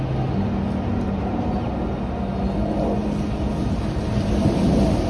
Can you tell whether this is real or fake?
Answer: real